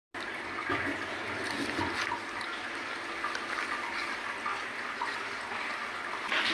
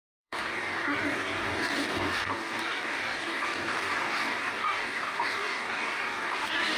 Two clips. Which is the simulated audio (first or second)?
second